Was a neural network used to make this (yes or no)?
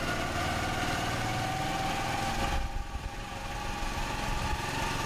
no